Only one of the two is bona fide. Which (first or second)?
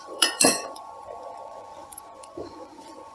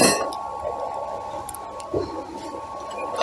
second